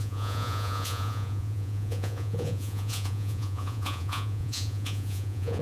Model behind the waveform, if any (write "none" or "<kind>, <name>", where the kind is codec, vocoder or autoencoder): vocoder, Vocos